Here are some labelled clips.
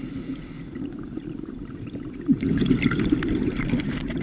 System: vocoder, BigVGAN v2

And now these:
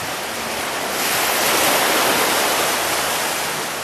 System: none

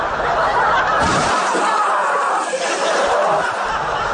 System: none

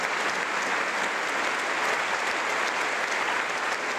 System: none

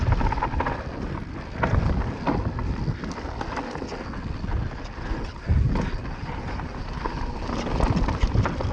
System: none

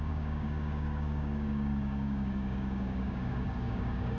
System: codec, DAC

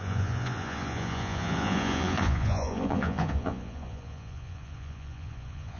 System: vocoder, Vocos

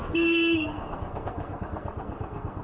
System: codec, SNAC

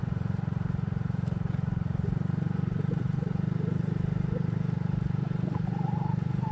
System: vocoder, BigVGAN v2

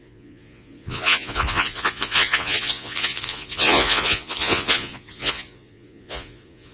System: vocoder, Vocos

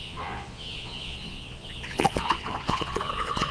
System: vocoder, Vocos